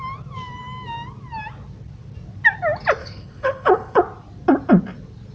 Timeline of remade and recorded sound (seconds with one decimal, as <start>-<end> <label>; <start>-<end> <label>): 0.0-3.0 recorded; 3.0-4.0 remade; 4.0-5.3 recorded